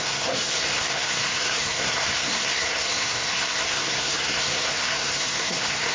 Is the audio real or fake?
fake